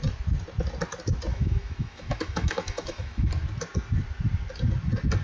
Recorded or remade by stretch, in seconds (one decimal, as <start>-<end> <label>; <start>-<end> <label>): 0.0-1.3 recorded; 1.3-3.3 remade; 3.3-5.2 recorded

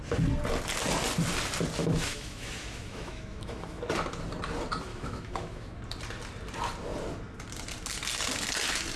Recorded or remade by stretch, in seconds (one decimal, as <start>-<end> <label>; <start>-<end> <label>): 0.0-1.8 recorded; 1.8-3.8 remade; 3.8-4.9 recorded; 4.9-5.8 remade; 5.8-9.0 recorded

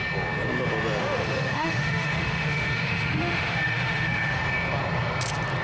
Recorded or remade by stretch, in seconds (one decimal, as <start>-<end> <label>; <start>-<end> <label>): 0.0-1.0 recorded; 1.0-4.4 remade; 4.4-5.6 recorded

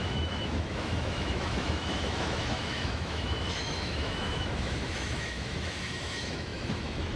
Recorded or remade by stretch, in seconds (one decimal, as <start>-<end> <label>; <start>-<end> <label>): 0.0-7.2 remade

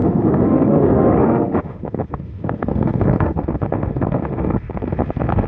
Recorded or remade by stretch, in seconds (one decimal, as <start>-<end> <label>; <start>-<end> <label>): 0.0-5.5 remade

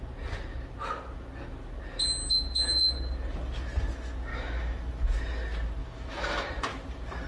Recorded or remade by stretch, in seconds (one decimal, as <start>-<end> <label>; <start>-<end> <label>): 0.0-4.3 recorded; 4.3-4.8 remade; 4.8-5.8 recorded; 5.8-6.5 remade; 6.5-7.3 recorded

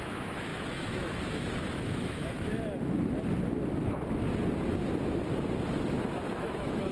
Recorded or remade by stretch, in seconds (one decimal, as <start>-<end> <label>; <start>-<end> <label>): 0.0-2.5 remade; 2.5-6.3 recorded; 6.3-6.9 remade